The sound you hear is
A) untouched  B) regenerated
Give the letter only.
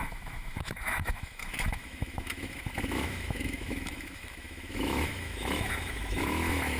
B